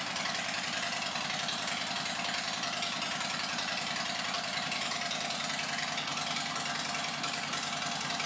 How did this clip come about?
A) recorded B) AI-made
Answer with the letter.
A